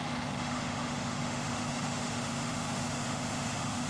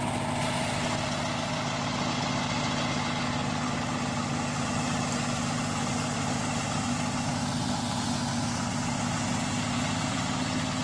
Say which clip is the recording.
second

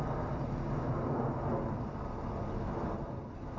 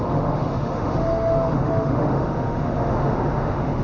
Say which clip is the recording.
first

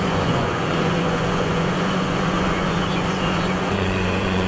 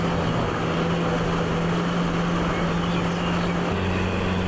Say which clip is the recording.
second